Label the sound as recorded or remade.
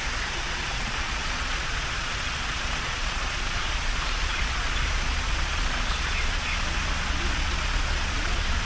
remade